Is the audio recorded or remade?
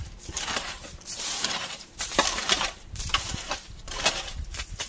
remade